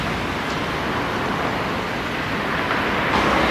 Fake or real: real